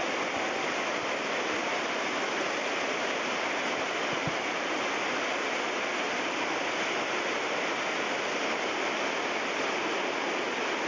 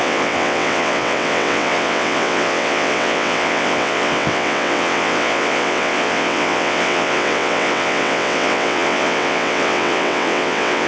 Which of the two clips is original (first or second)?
first